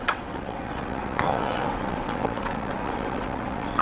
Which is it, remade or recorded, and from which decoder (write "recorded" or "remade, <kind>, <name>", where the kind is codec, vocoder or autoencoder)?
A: remade, vocoder, WaveNeXt